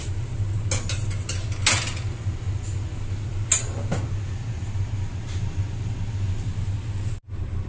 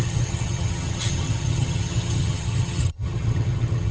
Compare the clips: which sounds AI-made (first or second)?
second